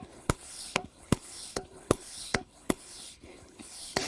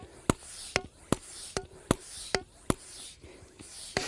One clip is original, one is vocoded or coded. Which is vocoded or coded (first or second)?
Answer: first